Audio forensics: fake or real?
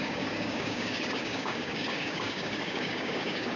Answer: fake